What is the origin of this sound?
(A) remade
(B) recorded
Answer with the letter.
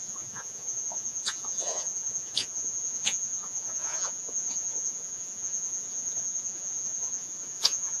A